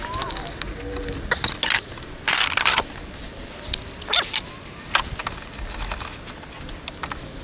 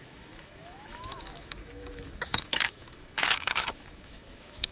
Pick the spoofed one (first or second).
second